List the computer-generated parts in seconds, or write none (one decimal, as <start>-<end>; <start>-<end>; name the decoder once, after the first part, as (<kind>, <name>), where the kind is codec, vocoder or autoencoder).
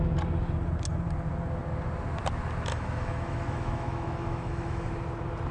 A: 2.7-4.9 (autoencoder, DAC-VAE)